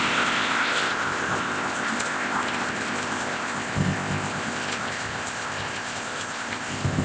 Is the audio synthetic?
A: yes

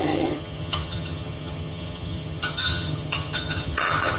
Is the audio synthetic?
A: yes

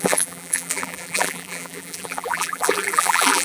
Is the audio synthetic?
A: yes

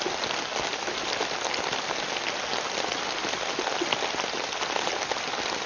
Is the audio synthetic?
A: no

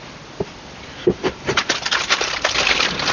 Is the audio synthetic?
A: yes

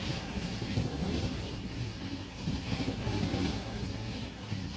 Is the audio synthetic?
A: yes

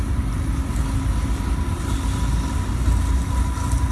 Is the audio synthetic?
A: no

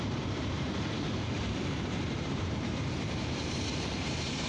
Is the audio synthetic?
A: yes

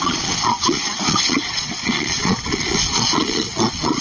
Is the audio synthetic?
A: yes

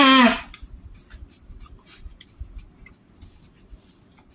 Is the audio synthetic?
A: no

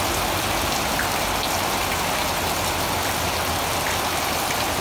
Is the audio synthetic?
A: no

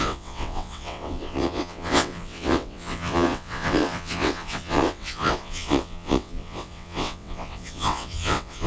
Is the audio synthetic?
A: yes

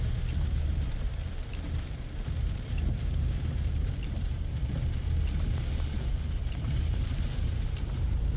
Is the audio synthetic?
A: yes